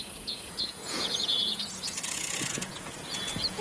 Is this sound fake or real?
fake